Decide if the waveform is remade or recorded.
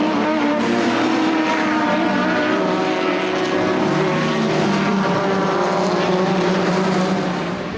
remade